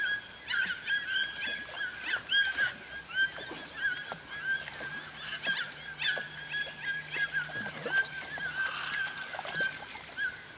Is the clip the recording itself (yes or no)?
yes